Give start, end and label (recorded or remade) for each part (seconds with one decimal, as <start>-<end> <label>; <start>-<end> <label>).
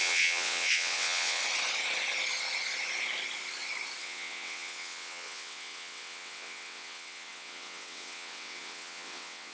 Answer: 0.0-1.4 remade; 1.4-4.0 recorded; 4.0-9.5 remade